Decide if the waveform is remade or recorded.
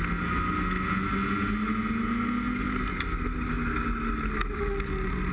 recorded